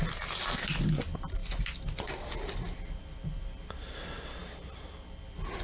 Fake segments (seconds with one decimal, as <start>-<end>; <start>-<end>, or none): none